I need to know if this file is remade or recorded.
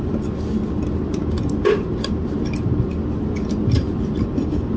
recorded